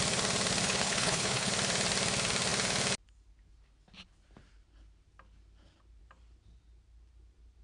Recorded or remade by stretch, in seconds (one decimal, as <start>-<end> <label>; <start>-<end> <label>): 0.0-0.6 recorded; 0.6-1.5 remade; 1.5-7.6 recorded